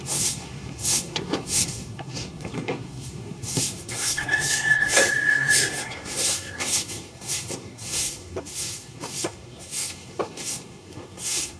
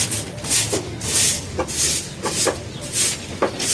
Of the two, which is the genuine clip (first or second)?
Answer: second